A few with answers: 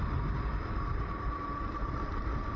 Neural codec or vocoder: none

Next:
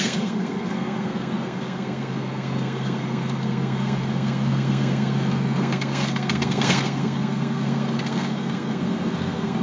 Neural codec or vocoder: codec, SNAC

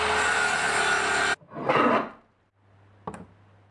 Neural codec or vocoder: none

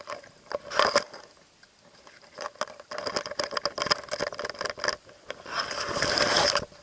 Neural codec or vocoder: none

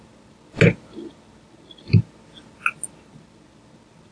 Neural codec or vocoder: none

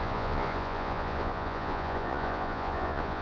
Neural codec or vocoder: vocoder, Vocos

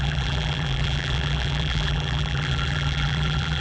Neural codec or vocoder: vocoder, BigVGAN v2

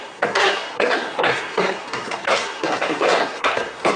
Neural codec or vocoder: codec, SNAC